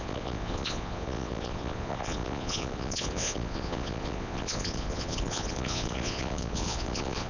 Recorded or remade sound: remade